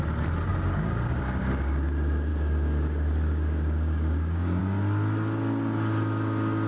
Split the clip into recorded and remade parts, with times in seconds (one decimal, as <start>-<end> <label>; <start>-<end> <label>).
0.0-0.5 recorded; 0.5-1.2 remade; 1.2-2.3 recorded; 2.3-4.6 remade; 4.6-6.7 recorded